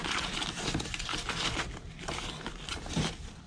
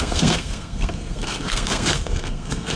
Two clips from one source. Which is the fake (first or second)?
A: second